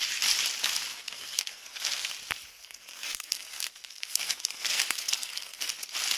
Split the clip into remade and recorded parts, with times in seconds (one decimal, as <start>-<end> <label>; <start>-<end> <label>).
0.0-0.9 recorded; 0.9-2.1 remade; 2.1-2.5 recorded; 2.5-5.7 remade; 5.7-6.2 recorded